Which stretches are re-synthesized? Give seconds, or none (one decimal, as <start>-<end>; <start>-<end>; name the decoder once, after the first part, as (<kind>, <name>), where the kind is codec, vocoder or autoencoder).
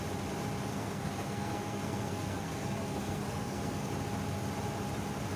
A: 0.7-3.9 (codec, SNAC)